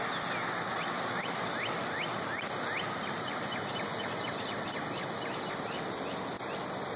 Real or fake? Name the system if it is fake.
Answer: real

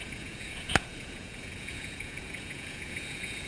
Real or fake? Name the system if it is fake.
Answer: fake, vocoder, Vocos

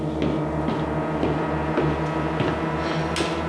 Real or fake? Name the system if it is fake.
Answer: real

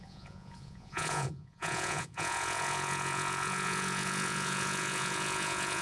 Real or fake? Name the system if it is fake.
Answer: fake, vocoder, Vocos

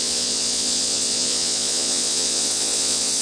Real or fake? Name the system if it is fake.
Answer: fake, vocoder, Vocos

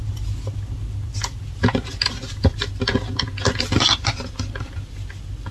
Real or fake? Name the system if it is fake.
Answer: real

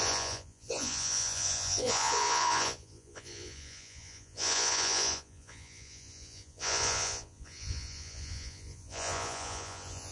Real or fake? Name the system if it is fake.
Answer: fake, vocoder, Vocos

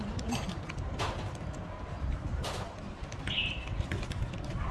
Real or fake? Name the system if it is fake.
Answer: real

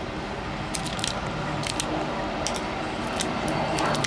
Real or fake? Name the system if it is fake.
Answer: real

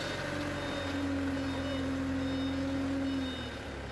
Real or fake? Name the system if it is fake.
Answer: real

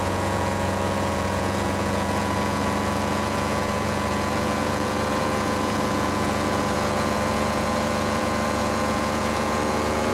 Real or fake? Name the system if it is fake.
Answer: fake, vocoder, Vocos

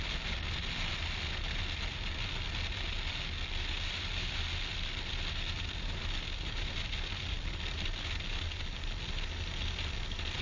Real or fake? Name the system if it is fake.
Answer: real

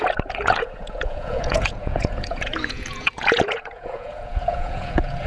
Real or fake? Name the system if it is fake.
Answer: fake, vocoder, Vocos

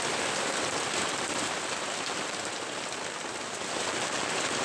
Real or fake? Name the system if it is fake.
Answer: real